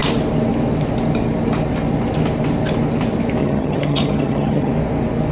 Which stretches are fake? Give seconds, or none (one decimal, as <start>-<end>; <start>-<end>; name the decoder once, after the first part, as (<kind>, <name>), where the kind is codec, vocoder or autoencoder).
3.4-4.7 (vocoder, HiFi-GAN)